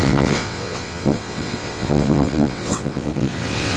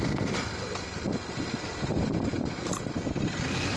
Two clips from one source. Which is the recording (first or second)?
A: second